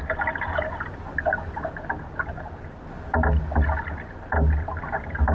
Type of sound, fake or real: real